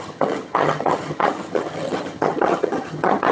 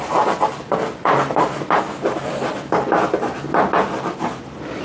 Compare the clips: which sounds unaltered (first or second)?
second